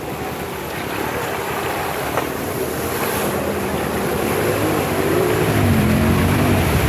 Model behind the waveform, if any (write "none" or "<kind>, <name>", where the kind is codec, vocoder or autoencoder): vocoder, BigVGAN v2